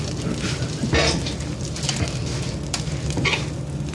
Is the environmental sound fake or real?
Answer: real